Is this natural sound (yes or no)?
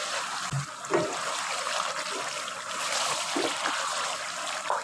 yes